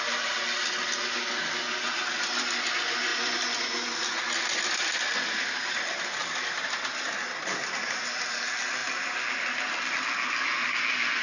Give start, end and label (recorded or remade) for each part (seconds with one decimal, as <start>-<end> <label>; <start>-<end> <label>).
0.0-11.2 recorded